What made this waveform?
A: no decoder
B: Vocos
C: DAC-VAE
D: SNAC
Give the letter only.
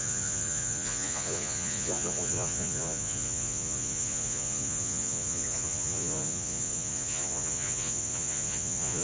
B